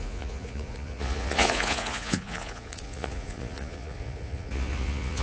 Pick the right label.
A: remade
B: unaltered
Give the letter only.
A